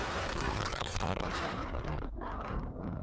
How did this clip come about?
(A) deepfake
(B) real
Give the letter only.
A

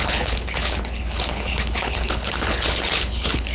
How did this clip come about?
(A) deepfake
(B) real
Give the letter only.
A